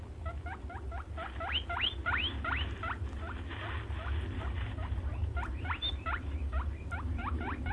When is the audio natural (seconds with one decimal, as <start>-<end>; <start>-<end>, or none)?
0.0-5.2